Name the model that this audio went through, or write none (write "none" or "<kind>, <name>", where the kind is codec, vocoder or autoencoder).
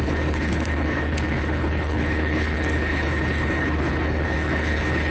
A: codec, HILCodec